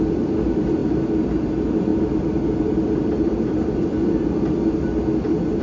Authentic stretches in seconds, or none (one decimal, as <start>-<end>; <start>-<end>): 0.0-5.6